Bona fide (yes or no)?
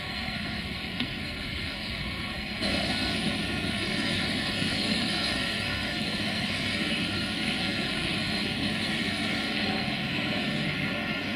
no